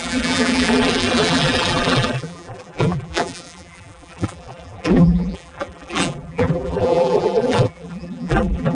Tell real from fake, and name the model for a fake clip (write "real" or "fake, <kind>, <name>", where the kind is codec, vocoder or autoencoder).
fake, vocoder, BigVGAN v2